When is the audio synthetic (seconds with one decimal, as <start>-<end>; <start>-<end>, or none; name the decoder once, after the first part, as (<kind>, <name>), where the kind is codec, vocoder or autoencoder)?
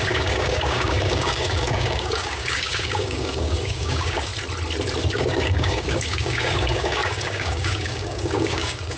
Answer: 0.0-4.3 (codec, DAC); 5.1-9.0